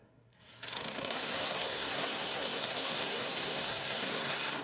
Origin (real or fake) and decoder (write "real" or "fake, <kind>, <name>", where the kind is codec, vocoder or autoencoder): fake, codec, SNAC